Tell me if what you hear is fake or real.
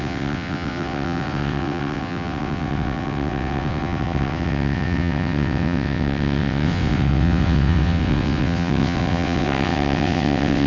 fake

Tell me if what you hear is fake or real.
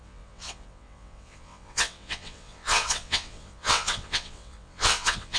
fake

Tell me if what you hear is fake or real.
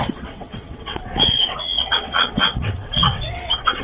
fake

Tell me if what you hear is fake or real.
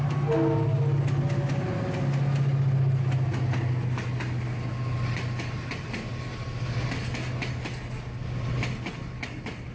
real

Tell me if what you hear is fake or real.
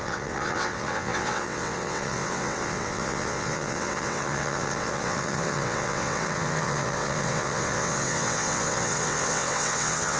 fake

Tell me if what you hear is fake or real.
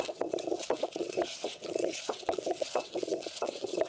fake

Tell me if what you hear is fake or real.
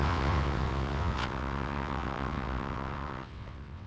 fake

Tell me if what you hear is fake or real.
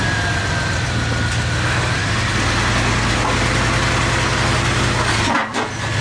real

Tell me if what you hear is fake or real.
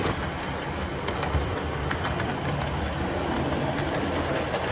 real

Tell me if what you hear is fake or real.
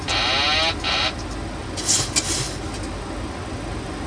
real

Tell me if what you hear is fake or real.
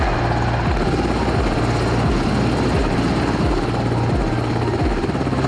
real